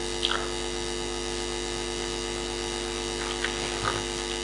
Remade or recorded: recorded